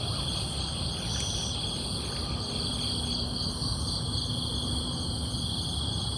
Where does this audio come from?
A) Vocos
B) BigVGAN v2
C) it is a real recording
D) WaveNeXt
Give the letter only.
C